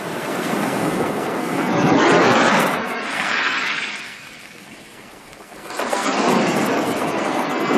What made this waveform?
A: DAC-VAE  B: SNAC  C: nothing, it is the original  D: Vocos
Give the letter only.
B